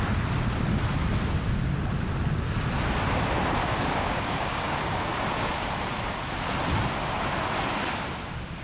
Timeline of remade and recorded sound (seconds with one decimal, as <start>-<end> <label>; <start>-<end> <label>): 0.0-3.6 recorded; 3.6-5.5 remade; 5.5-8.6 recorded